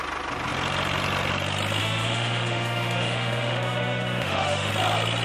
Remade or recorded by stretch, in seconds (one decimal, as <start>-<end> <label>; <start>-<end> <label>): 0.0-1.8 recorded; 1.8-4.7 remade; 4.7-5.2 recorded